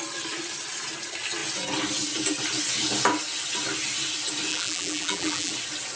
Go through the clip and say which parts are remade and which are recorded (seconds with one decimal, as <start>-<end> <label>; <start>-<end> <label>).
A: 0.0-4.5 recorded; 4.5-5.5 remade; 5.5-6.0 recorded

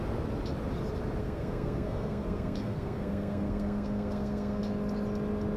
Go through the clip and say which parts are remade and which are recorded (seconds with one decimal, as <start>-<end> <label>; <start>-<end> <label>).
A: 0.0-1.2 recorded; 1.2-4.6 remade; 4.6-5.6 recorded

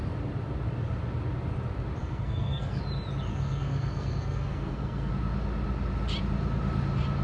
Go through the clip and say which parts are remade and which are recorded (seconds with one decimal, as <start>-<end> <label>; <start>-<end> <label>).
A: 0.0-2.0 recorded; 2.0-2.8 remade; 2.8-3.3 recorded; 3.3-5.1 remade; 5.1-7.2 recorded